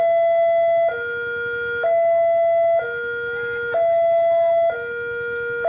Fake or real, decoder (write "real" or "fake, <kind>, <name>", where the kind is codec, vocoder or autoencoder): real